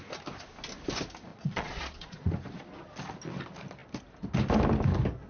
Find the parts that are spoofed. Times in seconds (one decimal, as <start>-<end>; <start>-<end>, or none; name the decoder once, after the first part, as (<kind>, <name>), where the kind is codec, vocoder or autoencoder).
1.3-2.3 (vocoder, Vocos)